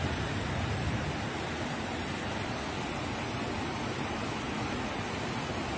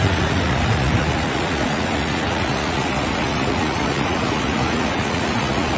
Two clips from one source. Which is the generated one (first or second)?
second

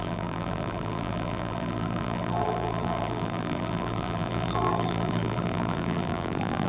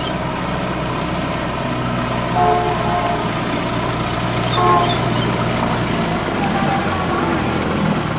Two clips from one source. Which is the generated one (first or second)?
first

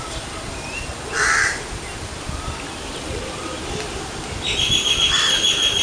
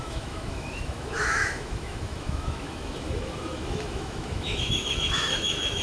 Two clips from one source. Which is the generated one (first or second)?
second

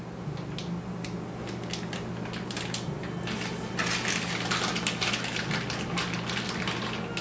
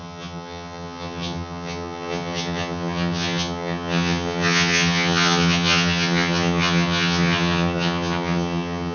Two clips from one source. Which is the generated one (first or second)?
second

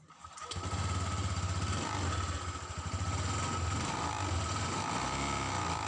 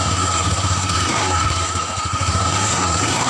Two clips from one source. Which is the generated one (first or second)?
second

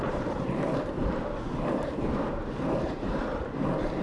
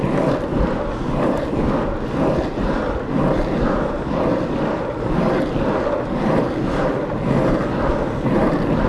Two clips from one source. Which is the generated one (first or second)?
first